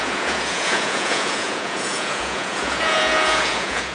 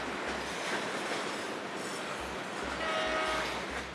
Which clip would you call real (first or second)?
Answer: second